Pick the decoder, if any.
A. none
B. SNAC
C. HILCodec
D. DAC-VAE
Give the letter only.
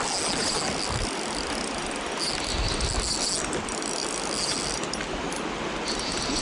A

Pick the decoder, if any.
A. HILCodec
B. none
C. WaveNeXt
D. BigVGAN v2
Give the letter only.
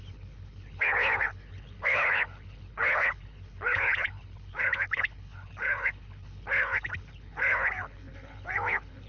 A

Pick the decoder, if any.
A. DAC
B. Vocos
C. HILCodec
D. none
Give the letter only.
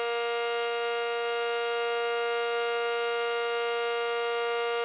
D